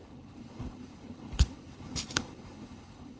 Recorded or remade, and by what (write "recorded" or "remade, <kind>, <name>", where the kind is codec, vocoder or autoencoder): remade, codec, HILCodec